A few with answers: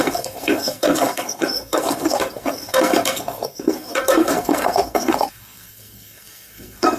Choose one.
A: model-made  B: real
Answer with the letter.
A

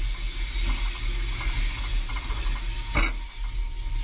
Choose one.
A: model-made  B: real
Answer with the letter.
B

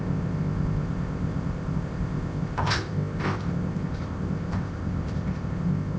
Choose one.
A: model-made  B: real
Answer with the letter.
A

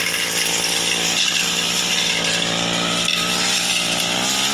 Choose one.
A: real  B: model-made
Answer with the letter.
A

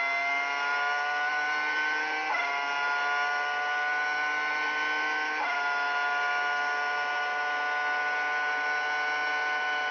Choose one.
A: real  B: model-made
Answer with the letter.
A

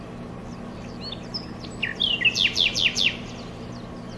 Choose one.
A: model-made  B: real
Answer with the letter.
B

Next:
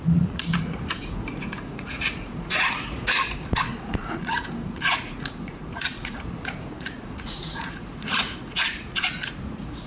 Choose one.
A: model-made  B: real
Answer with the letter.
A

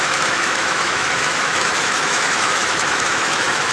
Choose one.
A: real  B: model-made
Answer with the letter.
B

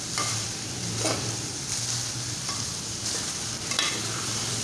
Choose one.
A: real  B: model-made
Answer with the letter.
B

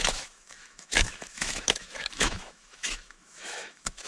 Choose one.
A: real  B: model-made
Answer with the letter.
B